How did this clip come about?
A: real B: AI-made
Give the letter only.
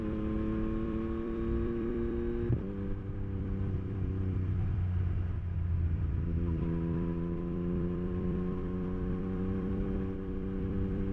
B